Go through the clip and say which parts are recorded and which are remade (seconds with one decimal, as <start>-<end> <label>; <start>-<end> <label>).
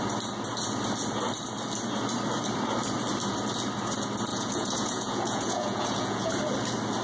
0.0-4.3 recorded; 4.3-6.3 remade; 6.3-7.0 recorded